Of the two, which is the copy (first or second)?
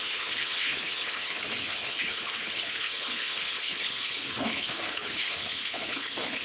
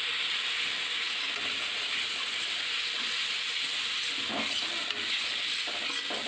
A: first